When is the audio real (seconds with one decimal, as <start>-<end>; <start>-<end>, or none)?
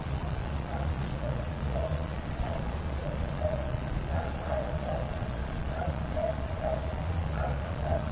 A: none